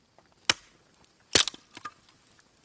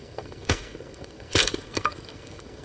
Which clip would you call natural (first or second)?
first